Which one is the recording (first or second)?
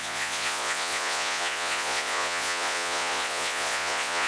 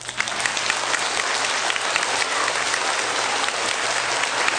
second